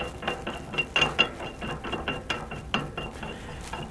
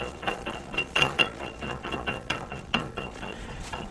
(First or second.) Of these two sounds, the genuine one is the first